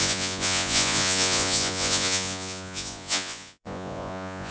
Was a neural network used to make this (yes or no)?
yes